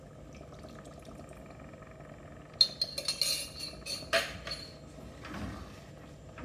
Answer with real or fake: real